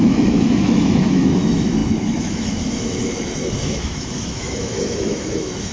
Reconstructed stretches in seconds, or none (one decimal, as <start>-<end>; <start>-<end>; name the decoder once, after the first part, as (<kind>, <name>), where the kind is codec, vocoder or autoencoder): 0.0-5.7 (autoencoder, DAC-VAE)